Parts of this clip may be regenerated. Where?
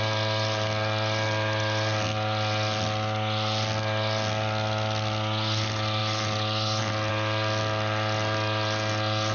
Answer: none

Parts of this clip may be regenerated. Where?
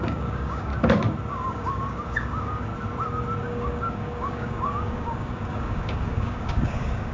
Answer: 0.0-0.7 (codec, DAC); 1.3-2.7; 3.4-7.1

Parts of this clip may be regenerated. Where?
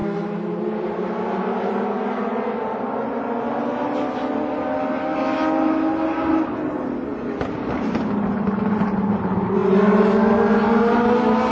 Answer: none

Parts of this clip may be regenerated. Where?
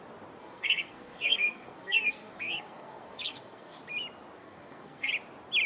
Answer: 0.4-3.8 (codec, SNAC); 4.4-5.1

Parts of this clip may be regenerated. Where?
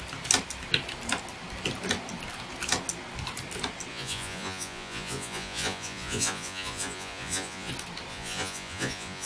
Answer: 3.9-7.7 (vocoder, Vocos); 8.1-9.3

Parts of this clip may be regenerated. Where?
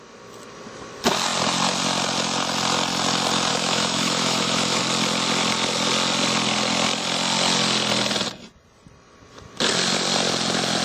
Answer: 3.5-4.8 (autoencoder, DAC-VAE)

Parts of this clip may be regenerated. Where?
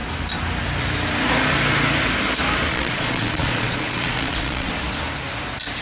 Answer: 2.7-4.7 (vocoder, Vocos)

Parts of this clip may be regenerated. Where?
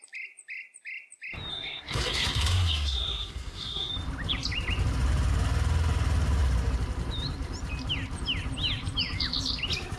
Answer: 1.5-3.9 (codec, SNAC)